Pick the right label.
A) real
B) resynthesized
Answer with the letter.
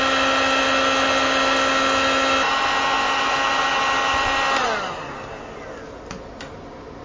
A